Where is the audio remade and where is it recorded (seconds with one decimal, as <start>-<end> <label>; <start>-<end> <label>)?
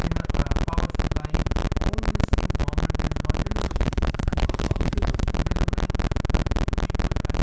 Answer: 0.0-3.6 recorded; 3.6-5.3 remade; 5.3-7.4 recorded